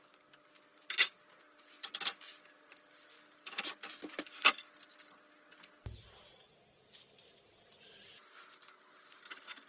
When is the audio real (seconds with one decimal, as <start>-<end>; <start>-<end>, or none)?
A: 0.0-9.7